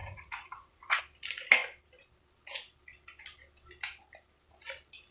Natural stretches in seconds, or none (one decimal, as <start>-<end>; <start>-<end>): 1.0-5.1